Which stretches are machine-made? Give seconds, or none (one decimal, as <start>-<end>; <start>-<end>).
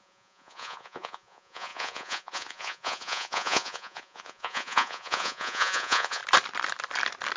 0.0-6.2